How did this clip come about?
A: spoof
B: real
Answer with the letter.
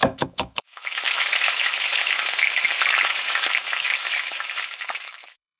A